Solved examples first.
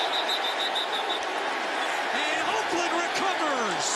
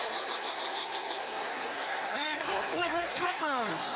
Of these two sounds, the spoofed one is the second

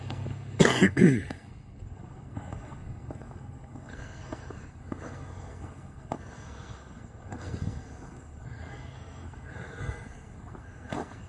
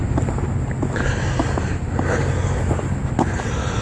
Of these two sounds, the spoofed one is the first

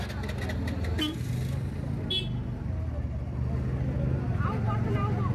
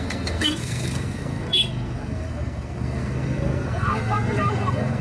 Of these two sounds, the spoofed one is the second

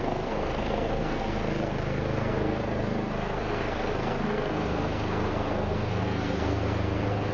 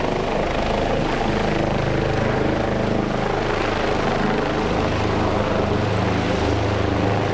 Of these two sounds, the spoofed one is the first